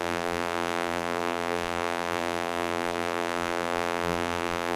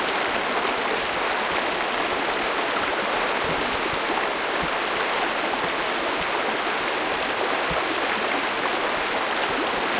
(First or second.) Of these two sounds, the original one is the second